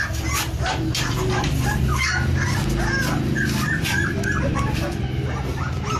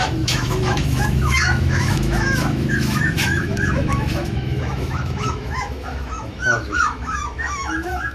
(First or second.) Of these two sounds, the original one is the first